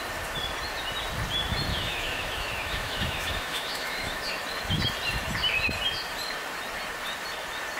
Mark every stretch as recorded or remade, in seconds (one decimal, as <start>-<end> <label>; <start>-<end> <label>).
0.0-1.7 recorded; 1.7-4.2 remade; 4.2-7.8 recorded